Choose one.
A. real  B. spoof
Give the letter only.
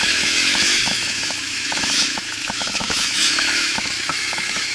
B